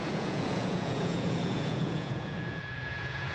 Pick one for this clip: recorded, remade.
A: remade